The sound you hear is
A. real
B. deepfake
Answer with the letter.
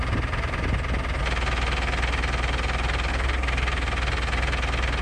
A